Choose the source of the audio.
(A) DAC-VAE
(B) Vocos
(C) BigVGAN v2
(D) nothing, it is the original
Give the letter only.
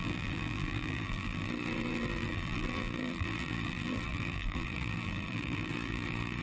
C